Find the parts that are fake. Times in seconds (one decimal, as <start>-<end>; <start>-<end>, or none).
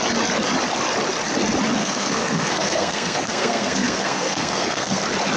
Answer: 1.8-5.0